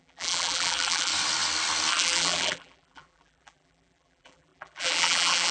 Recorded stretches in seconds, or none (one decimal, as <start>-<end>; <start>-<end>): 1.1-1.9